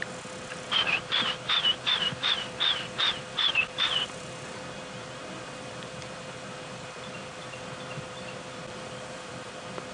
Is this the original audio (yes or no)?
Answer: no